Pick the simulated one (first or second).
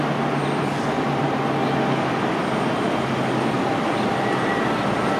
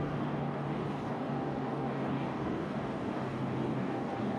second